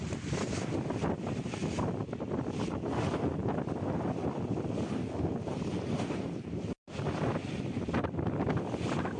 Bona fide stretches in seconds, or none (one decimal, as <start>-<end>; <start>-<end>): 0.0-3.4; 4.9-9.2